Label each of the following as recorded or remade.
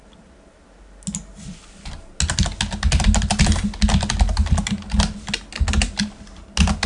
recorded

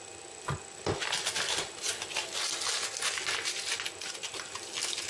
recorded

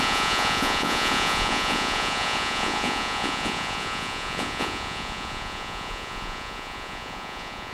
remade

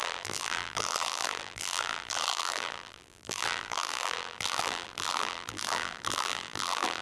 remade